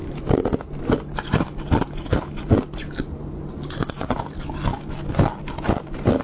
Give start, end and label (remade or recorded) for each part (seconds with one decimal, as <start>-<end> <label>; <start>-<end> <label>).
0.0-6.2 recorded